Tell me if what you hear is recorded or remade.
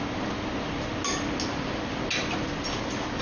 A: recorded